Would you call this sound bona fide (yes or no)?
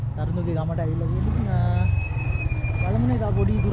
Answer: yes